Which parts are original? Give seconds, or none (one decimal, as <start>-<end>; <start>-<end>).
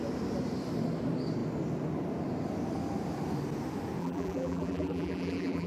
0.0-4.0